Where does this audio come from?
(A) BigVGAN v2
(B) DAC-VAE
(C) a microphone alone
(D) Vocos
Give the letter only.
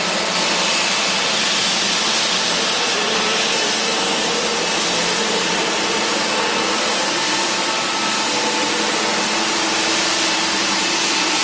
C